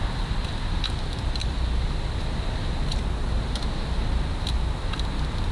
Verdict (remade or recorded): recorded